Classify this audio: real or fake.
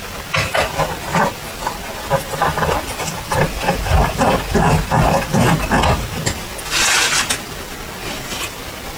real